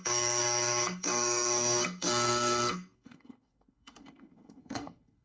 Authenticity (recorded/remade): remade